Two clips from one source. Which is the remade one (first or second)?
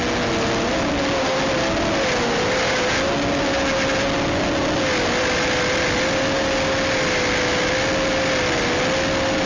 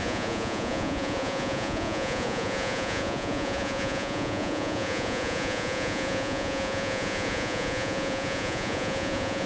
second